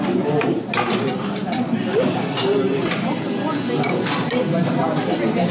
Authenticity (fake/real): real